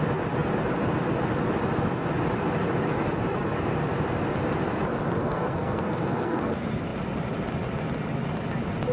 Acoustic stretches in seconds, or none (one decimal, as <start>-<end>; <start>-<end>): 0.0-5.2; 6.5-8.9